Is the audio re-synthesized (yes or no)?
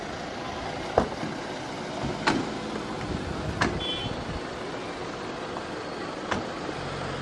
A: no